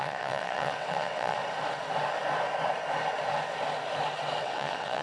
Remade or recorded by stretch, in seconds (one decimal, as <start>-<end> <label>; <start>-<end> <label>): 0.0-1.4 remade; 1.4-4.4 recorded; 4.4-5.0 remade

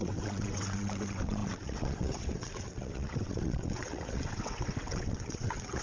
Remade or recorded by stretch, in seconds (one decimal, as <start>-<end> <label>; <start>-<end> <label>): 0.0-5.8 remade

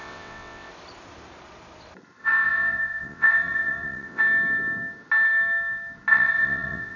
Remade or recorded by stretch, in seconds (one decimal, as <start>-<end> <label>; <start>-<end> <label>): 0.0-0.7 remade; 0.7-2.2 recorded; 2.2-4.2 remade; 4.2-6.1 recorded; 6.1-7.0 remade